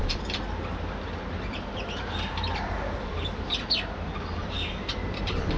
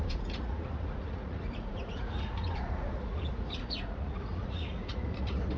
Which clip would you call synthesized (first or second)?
second